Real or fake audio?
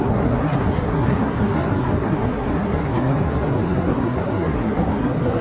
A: fake